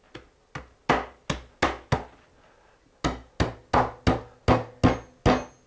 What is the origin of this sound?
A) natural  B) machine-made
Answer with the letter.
A